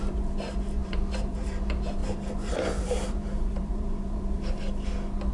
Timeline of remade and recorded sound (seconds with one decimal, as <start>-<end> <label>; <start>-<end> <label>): 0.0-0.8 recorded; 0.8-1.6 remade; 1.6-2.0 recorded; 2.0-4.6 remade; 4.6-5.3 recorded